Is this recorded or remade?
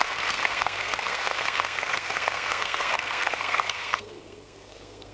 remade